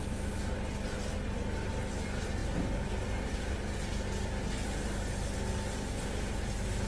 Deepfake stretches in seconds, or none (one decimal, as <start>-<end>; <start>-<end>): none